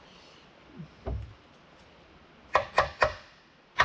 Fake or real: real